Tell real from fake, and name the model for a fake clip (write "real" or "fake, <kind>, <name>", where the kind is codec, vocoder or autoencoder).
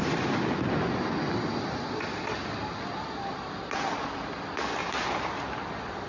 real